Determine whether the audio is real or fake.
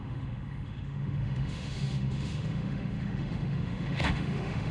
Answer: fake